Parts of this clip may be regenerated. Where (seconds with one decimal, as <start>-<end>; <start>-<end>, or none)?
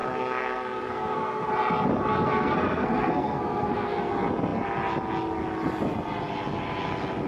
0.0-1.5; 2.1-4.1